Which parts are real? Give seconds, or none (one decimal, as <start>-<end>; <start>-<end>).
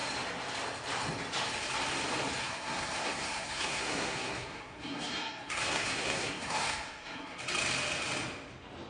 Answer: 0.0-2.4; 7.4-8.9